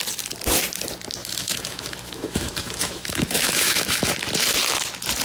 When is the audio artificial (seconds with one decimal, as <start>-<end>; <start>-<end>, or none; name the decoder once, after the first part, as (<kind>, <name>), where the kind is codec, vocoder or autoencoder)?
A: 1.2-4.1 (autoencoder, DAC-VAE)